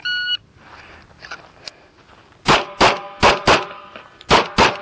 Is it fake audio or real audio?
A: real